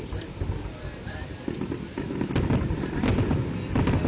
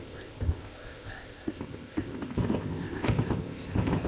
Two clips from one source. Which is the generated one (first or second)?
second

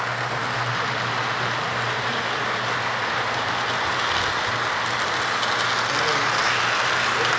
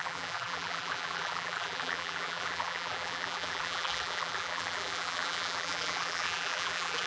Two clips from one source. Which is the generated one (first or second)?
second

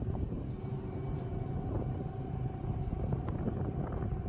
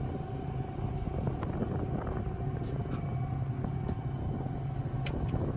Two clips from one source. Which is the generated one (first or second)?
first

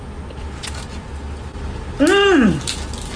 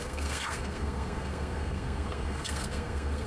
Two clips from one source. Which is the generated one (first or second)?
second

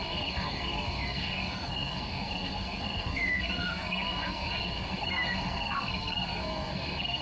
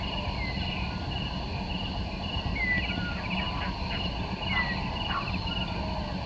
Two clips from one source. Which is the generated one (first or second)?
first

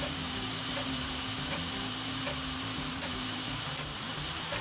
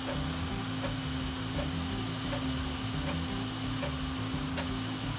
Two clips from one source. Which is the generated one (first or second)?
first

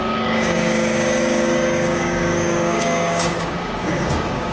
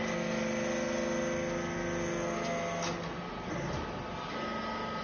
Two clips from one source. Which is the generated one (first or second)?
first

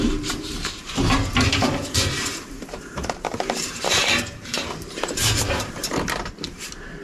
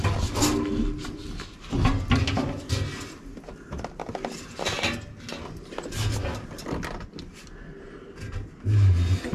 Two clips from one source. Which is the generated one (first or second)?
first